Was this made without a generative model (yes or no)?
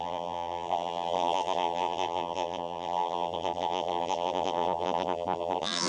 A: no